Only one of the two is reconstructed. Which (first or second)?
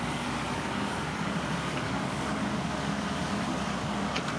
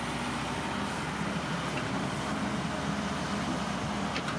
first